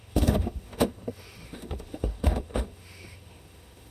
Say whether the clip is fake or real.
fake